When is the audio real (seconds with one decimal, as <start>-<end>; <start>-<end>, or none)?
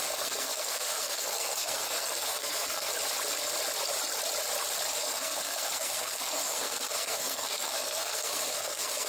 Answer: 2.9-5.0